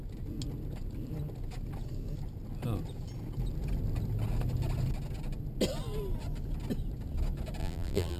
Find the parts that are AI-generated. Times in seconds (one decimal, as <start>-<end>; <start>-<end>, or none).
7.6-8.2